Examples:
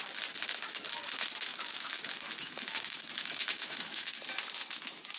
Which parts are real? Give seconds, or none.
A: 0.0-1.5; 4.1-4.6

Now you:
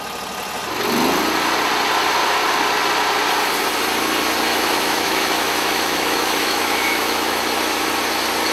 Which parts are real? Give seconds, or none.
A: 0.0-4.5; 7.4-8.5

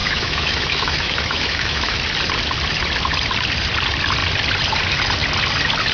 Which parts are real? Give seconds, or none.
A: 2.0-5.9